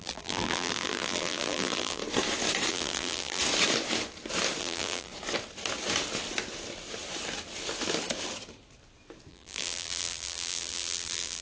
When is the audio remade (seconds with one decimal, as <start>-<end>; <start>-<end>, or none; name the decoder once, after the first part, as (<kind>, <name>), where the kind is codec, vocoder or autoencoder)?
0.0-2.0 (vocoder, BigVGAN v2); 2.7-3.4; 4.6-5.1; 9.3-11.4